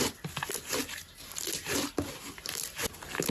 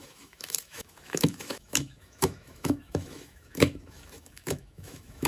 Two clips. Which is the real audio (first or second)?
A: first